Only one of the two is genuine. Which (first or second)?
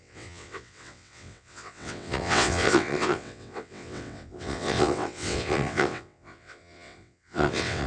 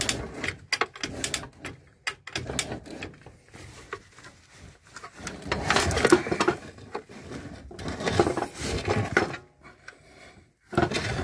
second